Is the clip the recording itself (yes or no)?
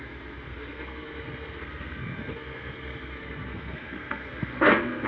no